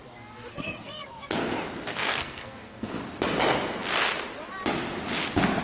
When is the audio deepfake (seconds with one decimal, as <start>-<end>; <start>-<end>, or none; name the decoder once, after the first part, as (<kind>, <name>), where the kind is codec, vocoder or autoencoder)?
0.5-1.5 (codec, SNAC); 1.9-3.0